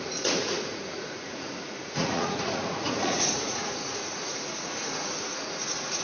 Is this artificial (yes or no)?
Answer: yes